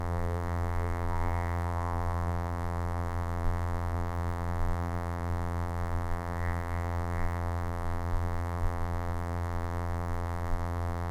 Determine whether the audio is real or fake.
fake